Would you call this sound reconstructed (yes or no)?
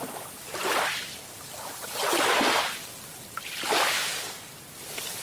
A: yes